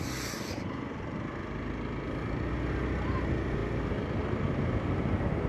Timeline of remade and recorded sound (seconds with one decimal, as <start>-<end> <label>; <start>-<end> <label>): 0.0-5.5 recorded